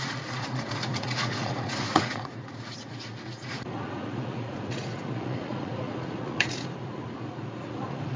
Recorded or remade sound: remade